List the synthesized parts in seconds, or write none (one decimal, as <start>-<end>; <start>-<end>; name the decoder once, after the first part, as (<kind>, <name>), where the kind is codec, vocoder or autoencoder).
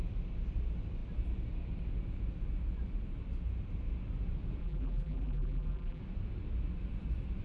4.6-6.0 (vocoder, BigVGAN v2)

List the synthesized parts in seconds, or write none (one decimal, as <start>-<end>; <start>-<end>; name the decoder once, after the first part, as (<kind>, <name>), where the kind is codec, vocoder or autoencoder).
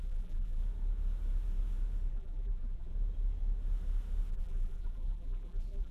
0.0-0.6 (vocoder, BigVGAN v2); 2.1-2.9; 4.3-5.9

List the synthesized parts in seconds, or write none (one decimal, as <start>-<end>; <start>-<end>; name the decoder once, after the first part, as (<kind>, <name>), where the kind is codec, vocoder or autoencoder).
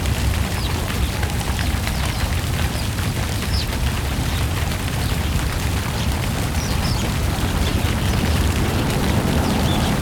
none